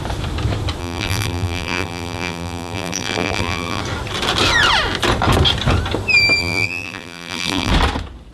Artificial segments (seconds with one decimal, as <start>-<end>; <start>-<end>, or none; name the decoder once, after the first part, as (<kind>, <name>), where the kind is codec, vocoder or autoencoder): 0.8-3.8 (vocoder, BigVGAN v2); 6.4-7.7